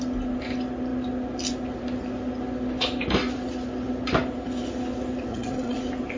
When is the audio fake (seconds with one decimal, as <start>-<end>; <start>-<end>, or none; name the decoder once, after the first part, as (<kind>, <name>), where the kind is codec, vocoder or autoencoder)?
5.3-5.8 (vocoder, HiFi-GAN)